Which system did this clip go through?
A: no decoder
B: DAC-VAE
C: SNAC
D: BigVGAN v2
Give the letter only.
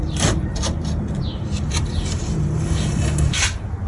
D